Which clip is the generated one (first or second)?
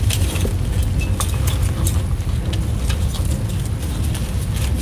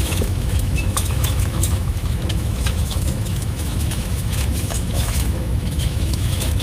second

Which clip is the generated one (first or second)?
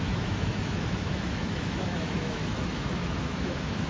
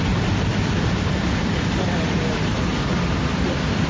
first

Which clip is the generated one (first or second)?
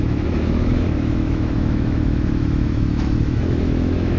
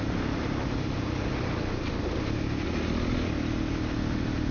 first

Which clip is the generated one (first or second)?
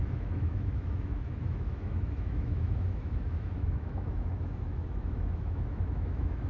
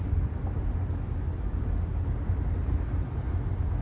first